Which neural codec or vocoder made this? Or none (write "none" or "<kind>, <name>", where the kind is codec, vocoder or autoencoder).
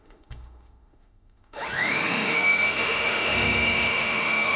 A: autoencoder, DAC-VAE